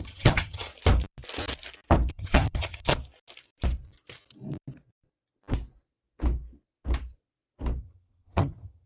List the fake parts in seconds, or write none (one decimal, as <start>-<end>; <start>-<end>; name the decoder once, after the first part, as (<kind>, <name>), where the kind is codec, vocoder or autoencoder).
0.0-0.7 (vocoder, HiFi-GAN); 2.1-2.9; 7.8-8.9